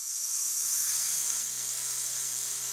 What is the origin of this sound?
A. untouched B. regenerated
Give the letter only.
B